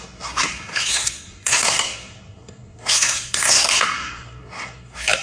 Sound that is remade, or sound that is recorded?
remade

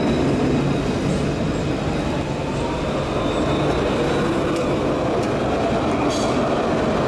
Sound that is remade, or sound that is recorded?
recorded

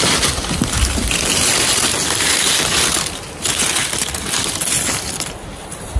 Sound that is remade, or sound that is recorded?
recorded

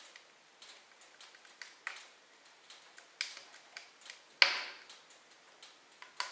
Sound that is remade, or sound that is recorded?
recorded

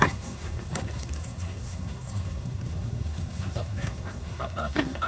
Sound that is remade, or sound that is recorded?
remade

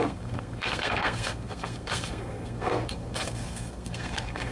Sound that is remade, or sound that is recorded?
remade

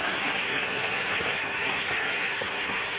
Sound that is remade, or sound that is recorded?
remade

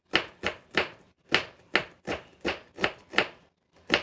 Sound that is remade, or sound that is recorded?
recorded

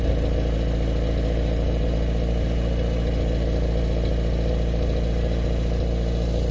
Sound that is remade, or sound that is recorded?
recorded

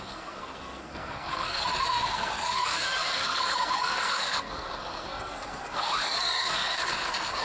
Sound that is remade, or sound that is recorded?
remade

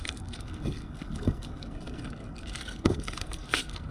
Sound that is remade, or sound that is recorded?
remade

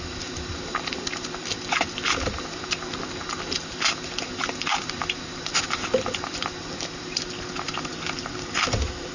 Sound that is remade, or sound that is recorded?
recorded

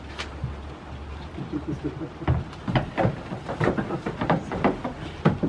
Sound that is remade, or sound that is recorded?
recorded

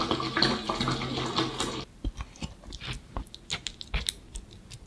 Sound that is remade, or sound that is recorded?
recorded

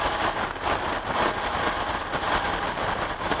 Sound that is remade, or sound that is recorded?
recorded